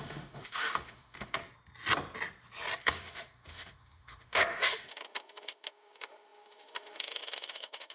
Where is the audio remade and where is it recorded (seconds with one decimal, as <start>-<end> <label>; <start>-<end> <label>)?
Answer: 0.0-1.4 remade; 1.4-2.8 recorded; 2.8-7.9 remade